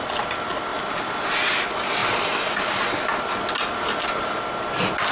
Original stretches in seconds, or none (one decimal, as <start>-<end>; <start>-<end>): 0.0-5.1